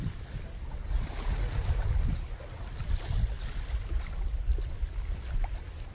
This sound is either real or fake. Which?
real